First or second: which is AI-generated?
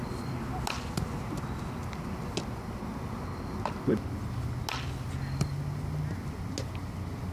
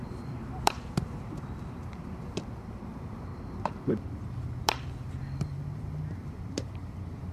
second